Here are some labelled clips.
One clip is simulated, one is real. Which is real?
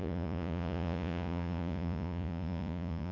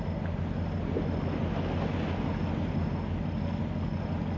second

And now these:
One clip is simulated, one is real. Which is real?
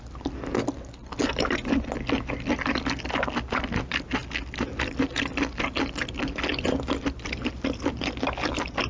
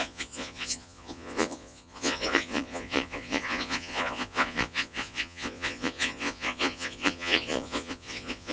first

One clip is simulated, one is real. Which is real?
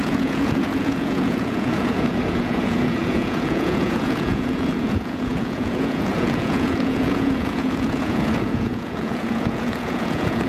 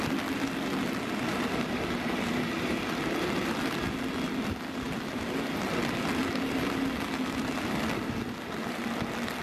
second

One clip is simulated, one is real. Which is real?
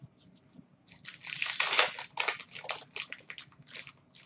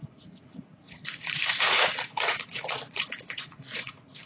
first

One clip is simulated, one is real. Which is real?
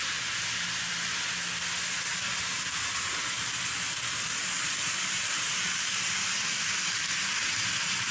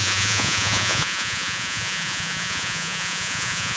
first